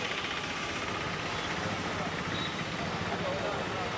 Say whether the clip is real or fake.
real